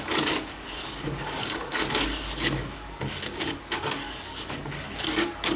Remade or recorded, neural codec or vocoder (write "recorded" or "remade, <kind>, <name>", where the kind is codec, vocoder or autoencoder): remade, codec, DAC